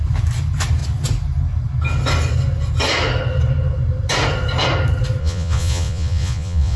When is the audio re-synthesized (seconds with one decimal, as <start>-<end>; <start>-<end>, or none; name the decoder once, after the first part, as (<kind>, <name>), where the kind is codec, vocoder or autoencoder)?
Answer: 5.2-6.8 (vocoder, Vocos)